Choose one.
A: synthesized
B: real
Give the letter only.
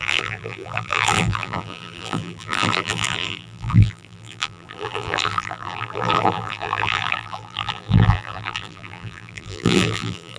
A